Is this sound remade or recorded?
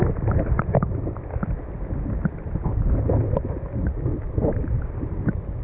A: recorded